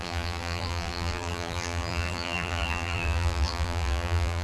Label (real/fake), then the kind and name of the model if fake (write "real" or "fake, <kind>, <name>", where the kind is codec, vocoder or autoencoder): fake, vocoder, BigVGAN v2